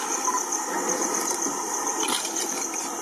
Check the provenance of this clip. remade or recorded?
recorded